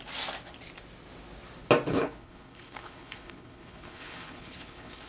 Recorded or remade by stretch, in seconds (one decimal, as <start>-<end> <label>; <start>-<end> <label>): 0.0-1.9 recorded; 1.9-5.1 remade